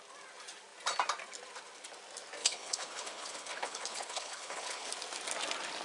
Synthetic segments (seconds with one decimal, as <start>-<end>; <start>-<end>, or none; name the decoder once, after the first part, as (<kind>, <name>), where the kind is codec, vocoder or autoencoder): 2.4-4.9 (codec, HILCodec)